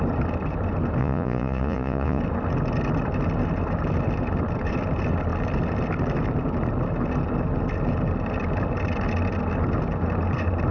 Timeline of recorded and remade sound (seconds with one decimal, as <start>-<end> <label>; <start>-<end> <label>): 0.0-1.0 recorded; 1.0-2.2 remade; 2.2-10.7 recorded